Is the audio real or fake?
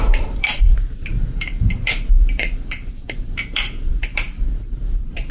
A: fake